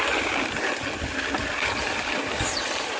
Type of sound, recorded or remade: recorded